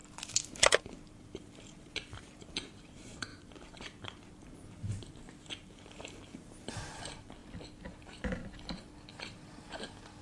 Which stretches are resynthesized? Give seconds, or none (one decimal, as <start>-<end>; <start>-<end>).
0.7-7.4; 8.0-8.4; 9.2-10.2